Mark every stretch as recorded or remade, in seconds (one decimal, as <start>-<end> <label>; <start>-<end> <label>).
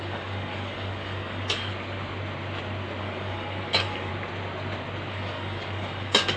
0.0-1.7 remade; 1.7-3.0 recorded; 3.0-4.1 remade; 4.1-5.1 recorded; 5.1-6.4 remade